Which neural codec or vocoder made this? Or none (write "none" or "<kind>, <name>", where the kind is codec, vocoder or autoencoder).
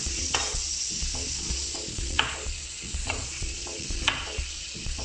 vocoder, Vocos